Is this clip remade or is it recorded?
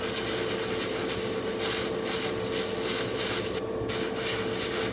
recorded